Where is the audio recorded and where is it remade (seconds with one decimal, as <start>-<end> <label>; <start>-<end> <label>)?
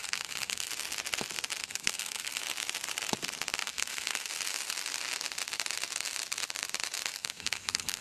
0.0-0.7 remade; 0.7-1.6 recorded; 1.6-2.4 remade; 2.4-3.6 recorded; 3.6-4.3 remade; 4.3-7.1 recorded; 7.1-8.0 remade